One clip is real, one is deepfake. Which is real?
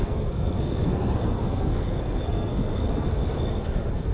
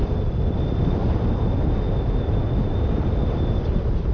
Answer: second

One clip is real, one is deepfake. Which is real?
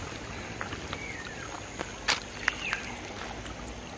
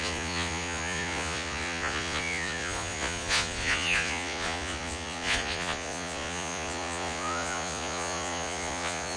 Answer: first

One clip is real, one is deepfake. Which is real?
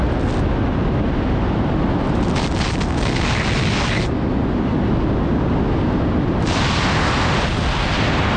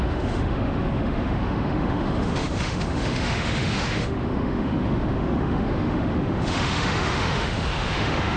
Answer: first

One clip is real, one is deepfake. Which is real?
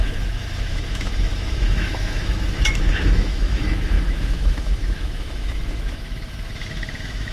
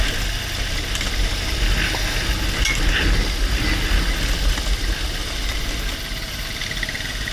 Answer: second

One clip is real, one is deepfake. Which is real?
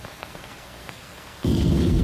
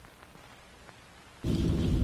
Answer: second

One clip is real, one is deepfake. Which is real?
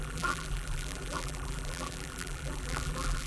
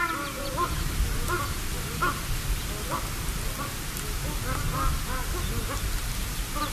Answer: second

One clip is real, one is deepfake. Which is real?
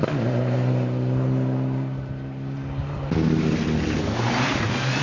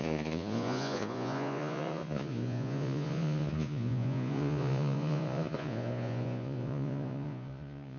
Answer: first